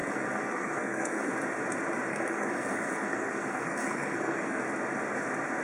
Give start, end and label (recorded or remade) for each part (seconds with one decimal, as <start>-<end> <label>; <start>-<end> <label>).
0.0-1.3 remade; 1.3-2.1 recorded; 2.1-4.6 remade; 4.6-5.6 recorded